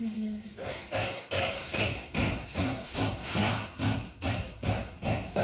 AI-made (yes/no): yes